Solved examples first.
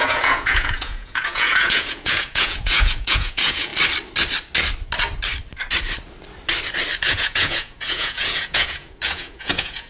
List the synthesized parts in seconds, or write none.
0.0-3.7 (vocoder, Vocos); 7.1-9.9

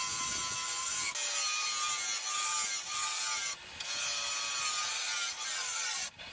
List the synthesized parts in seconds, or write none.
none

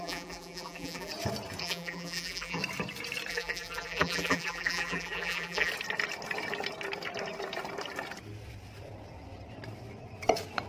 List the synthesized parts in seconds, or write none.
0.0-1.1 (vocoder, BigVGAN v2); 1.6-2.6; 3.3-5.7